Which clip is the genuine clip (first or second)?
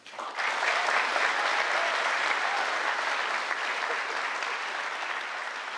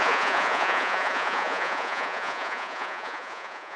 first